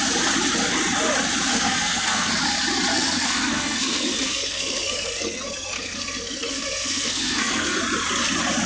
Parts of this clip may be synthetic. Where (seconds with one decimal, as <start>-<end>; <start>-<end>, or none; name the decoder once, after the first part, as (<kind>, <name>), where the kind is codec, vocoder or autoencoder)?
1.5-2.3 (codec, SNAC); 2.9-7.8